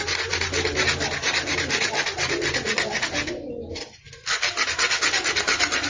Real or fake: real